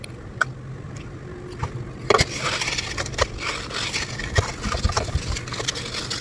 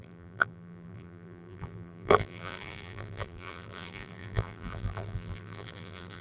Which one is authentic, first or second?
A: first